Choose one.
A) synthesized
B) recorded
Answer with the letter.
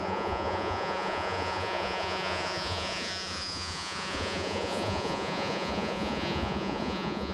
A